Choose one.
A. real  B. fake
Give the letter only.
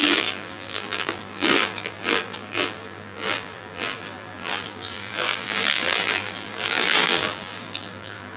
B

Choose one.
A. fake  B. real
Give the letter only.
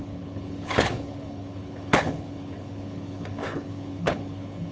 A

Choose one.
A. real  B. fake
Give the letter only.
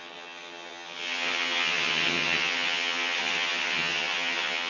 B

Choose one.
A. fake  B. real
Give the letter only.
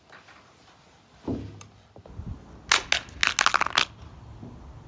B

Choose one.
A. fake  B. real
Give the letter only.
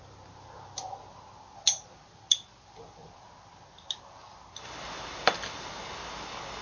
B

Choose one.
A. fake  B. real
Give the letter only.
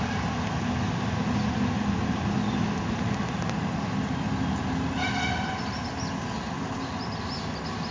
B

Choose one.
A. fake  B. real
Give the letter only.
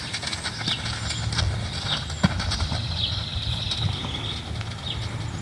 B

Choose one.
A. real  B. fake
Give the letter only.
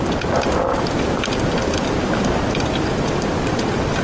A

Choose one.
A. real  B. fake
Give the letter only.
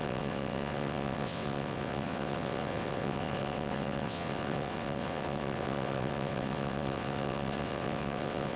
B